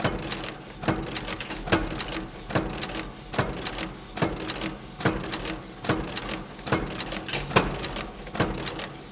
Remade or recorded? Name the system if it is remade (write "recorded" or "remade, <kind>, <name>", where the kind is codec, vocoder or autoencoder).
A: recorded